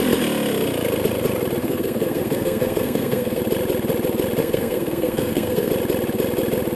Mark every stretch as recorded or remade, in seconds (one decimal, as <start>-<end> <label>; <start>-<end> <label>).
0.0-1.6 recorded; 1.6-3.4 remade; 3.4-4.4 recorded; 4.4-5.7 remade; 5.7-6.8 recorded